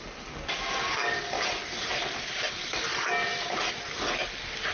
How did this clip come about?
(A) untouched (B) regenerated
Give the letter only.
A